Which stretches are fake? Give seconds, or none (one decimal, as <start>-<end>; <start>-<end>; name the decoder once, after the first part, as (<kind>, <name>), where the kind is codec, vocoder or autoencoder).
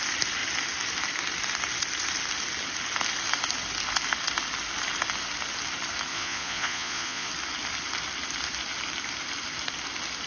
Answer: 6.1-7.3 (vocoder, Vocos)